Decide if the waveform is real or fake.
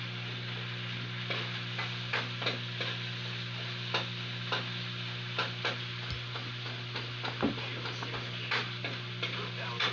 real